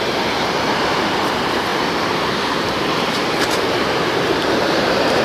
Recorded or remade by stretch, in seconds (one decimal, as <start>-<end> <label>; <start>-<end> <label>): 0.0-5.2 remade